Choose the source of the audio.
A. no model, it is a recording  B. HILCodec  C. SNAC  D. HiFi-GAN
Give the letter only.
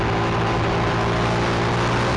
A